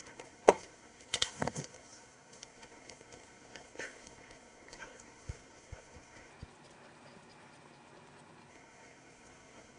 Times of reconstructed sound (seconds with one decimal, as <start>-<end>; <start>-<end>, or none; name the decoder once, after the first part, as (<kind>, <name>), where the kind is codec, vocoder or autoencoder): 0.0-6.3 (codec, SNAC); 8.5-9.8